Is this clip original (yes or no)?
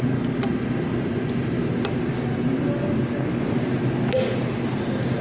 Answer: yes